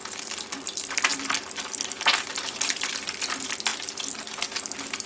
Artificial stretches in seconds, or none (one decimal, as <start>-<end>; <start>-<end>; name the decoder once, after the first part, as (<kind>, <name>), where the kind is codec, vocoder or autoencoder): 0.0-2.9 (vocoder, BigVGAN v2); 3.7-4.5